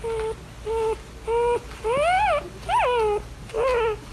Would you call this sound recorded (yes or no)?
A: yes